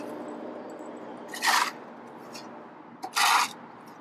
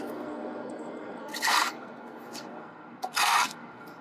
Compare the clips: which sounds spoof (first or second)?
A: second